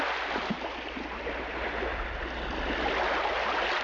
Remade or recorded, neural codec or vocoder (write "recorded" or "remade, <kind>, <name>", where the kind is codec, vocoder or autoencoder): recorded